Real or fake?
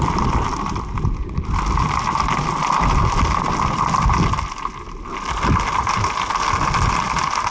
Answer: real